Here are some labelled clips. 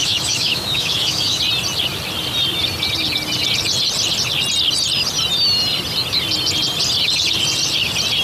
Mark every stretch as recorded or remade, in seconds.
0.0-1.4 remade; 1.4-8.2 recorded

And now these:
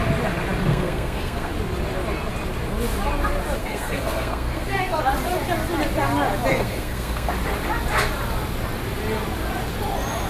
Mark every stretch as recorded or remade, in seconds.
0.0-0.7 recorded; 0.7-1.5 remade; 1.5-3.6 recorded; 3.6-5.0 remade; 5.0-6.5 recorded; 6.5-7.3 remade; 7.3-10.3 recorded